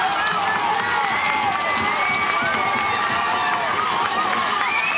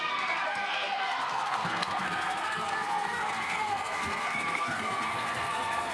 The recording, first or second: first